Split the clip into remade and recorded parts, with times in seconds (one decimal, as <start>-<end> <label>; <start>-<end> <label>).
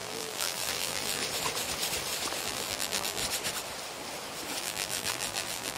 0.0-1.2 remade; 1.2-2.4 recorded; 2.4-3.2 remade; 3.2-4.6 recorded; 4.6-5.8 remade